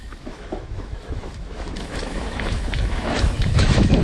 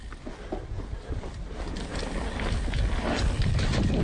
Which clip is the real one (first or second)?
second